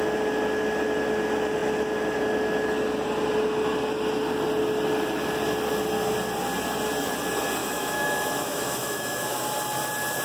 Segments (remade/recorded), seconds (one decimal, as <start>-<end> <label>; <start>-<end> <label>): 0.0-7.6 recorded; 7.6-9.4 remade; 9.4-10.2 recorded